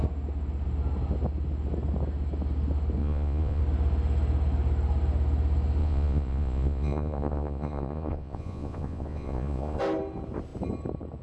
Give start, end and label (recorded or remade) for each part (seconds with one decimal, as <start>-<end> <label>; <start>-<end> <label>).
0.0-3.0 recorded; 3.0-3.6 remade; 3.6-5.8 recorded; 5.8-9.8 remade; 9.8-11.2 recorded